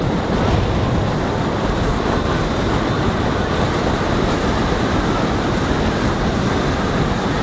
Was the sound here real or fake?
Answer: real